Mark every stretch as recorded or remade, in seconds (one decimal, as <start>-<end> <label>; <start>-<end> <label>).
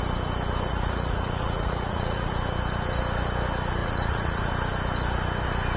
0.0-0.7 recorded; 0.7-2.3 remade; 2.3-3.8 recorded; 3.8-4.5 remade; 4.5-5.8 recorded